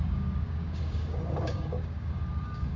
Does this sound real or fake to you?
fake